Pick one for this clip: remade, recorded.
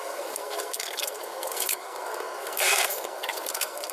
remade